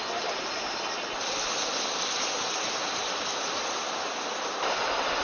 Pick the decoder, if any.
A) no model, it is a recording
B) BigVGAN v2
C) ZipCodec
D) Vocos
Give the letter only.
A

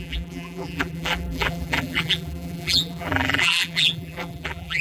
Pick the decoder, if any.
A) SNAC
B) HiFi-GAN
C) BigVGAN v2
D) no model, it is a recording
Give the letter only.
C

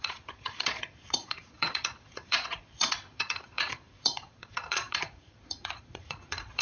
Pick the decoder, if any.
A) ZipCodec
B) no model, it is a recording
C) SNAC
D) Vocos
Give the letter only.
D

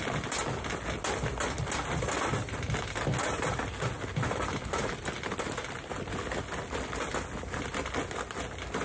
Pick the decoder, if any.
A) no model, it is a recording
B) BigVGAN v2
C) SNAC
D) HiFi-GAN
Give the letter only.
A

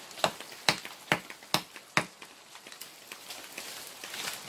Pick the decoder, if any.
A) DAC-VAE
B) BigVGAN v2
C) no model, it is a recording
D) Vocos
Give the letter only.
C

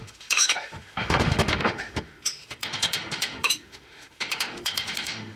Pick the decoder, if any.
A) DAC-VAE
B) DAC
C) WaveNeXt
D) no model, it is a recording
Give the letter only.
A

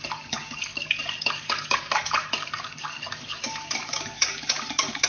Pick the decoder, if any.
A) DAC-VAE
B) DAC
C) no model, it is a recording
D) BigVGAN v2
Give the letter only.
B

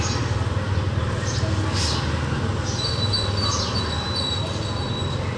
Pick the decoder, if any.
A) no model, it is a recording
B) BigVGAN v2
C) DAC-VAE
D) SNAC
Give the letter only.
A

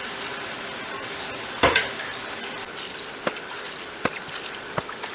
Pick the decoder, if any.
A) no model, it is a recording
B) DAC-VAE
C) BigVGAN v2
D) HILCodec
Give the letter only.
C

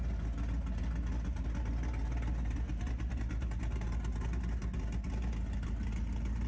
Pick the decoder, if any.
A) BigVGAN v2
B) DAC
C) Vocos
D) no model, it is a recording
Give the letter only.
D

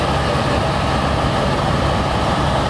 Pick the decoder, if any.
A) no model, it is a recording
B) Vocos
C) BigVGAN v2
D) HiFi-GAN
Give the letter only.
A